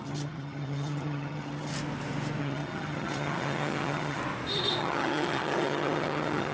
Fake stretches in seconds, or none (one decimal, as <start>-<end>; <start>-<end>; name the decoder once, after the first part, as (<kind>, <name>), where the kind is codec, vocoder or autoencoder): 0.0-1.7 (vocoder, HiFi-GAN); 2.4-4.2; 4.8-6.5